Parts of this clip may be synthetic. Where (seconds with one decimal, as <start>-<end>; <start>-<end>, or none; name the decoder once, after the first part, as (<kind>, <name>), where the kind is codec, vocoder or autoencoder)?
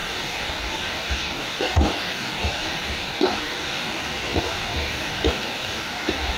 0.0-6.4 (codec, DAC)